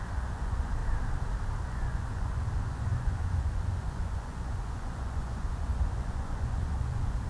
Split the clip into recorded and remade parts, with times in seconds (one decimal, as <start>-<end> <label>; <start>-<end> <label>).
0.0-0.8 remade; 0.8-1.6 recorded; 1.6-7.3 remade